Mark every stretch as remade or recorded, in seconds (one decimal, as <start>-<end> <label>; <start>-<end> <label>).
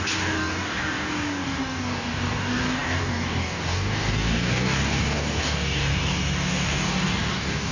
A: 0.0-7.7 remade